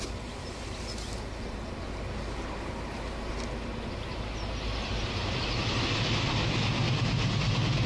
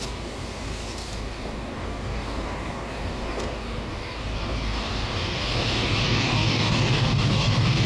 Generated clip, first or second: second